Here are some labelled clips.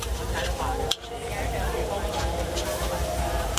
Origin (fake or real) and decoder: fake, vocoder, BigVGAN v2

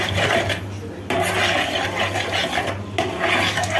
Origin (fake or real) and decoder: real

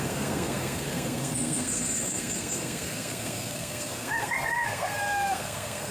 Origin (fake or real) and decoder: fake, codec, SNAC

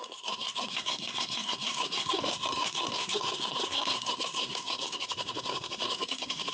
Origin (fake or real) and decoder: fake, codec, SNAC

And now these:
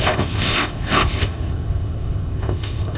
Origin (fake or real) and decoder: fake, codec, ZipCodec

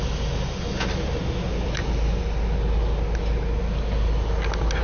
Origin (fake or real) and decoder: real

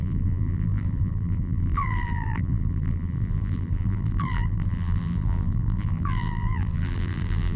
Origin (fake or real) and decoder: fake, vocoder, BigVGAN v2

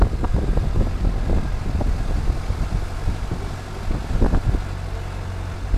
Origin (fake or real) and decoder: real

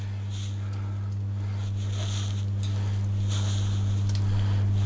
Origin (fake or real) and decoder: real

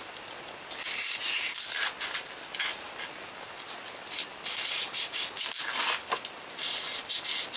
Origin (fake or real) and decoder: real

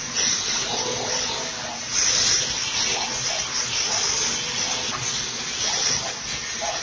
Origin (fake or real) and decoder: real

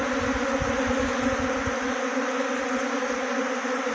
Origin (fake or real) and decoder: real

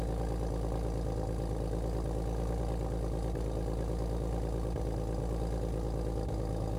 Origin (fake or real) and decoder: real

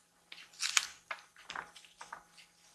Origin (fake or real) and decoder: real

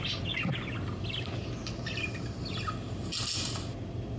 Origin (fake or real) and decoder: real